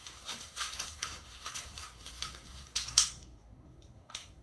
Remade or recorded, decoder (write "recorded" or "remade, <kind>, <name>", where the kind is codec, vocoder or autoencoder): remade, codec, SNAC